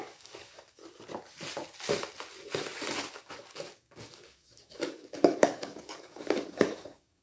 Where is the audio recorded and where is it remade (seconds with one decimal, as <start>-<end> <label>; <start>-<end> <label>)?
0.0-0.8 remade; 0.8-3.2 recorded; 3.2-7.2 remade